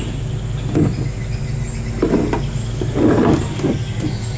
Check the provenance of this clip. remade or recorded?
recorded